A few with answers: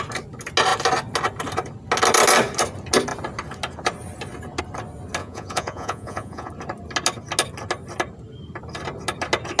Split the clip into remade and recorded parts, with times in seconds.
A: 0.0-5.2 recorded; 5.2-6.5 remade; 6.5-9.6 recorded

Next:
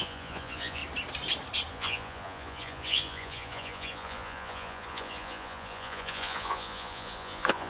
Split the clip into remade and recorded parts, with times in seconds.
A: 0.0-0.8 remade; 0.8-1.7 recorded; 1.7-7.7 remade

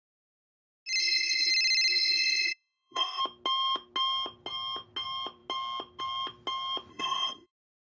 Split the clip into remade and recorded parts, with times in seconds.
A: 0.0-1.0 recorded; 1.0-1.5 remade; 1.5-1.9 recorded; 1.9-3.2 remade; 3.2-6.9 recorded; 6.9-7.5 remade; 7.5-7.9 recorded